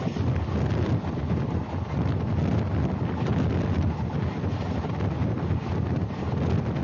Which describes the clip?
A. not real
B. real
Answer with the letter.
B